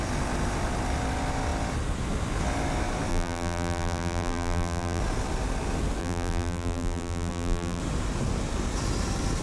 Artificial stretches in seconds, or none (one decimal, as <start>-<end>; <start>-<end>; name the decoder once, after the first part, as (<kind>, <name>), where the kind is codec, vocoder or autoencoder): 3.1-5.0 (vocoder, BigVGAN v2); 6.0-7.8

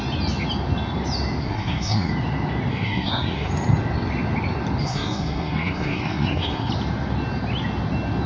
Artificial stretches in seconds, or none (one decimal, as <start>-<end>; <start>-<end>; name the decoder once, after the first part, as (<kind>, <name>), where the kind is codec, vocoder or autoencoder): 1.4-2.1 (codec, SNAC); 2.7-3.5; 4.8-6.7

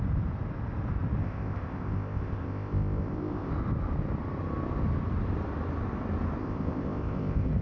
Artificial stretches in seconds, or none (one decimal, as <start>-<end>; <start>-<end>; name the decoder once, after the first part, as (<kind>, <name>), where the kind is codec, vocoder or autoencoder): 1.2-3.5 (codec, ZipCodec); 6.4-7.6

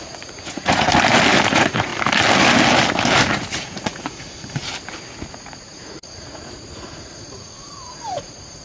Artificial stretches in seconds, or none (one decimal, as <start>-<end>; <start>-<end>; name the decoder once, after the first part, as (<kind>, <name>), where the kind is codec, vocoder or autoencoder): 0.0-0.9 (vocoder, Vocos); 1.5-1.9; 3.3-4.6; 5.3-8.6

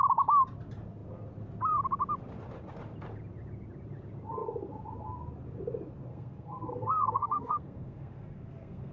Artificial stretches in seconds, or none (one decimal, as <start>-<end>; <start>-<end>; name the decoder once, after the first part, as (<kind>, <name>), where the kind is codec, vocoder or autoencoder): 6.1-8.9 (codec, SNAC)

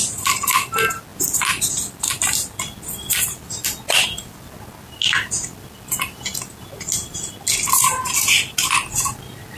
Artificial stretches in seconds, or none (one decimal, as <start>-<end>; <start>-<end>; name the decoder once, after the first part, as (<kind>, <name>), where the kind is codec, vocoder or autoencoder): none

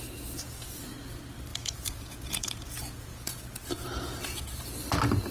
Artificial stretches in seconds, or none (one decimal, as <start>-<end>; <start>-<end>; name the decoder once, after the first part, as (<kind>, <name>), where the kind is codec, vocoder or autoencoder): 1.5-4.7 (vocoder, Vocos)

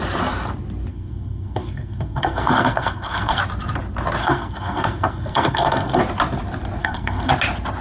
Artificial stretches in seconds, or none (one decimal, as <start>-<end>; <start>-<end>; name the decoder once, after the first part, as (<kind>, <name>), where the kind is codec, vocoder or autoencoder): 0.9-3.4 (codec, SNAC); 4.2-6.0; 6.8-7.3